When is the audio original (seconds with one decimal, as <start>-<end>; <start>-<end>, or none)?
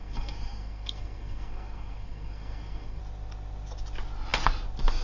3.0-5.0